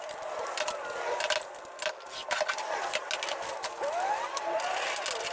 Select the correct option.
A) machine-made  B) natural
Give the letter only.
B